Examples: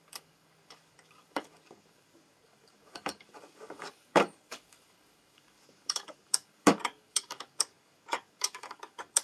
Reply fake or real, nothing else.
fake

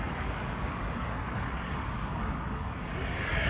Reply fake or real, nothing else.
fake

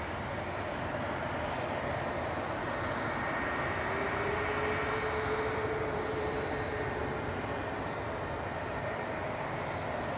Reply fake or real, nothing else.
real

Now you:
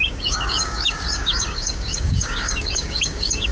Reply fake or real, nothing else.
fake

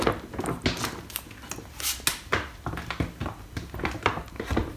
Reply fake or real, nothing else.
real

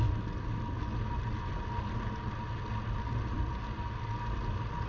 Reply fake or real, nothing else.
real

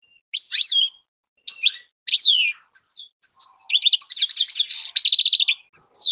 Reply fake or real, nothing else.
real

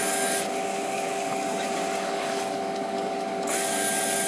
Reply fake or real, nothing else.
fake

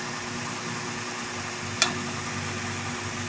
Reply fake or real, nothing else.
real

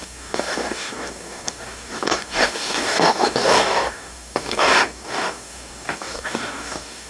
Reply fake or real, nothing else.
fake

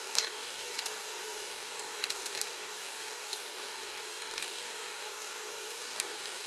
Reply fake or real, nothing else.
fake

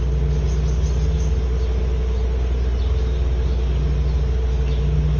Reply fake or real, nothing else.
real